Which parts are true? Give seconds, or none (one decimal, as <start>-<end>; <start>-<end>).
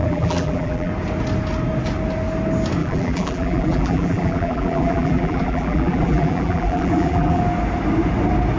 0.9-2.8; 7.4-8.6